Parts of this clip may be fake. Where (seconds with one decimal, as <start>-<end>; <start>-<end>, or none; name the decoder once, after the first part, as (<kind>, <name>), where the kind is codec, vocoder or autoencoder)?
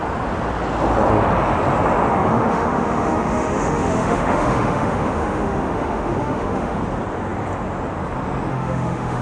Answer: 2.1-6.8 (autoencoder, DAC-VAE); 8.5-9.2